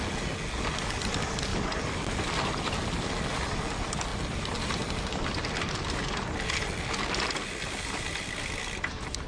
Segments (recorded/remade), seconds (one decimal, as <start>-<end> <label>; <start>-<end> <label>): 0.0-9.3 recorded